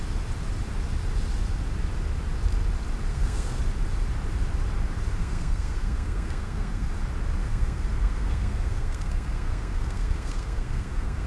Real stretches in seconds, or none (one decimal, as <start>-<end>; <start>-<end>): 0.0-3.1; 3.6-5.2; 6.9-7.4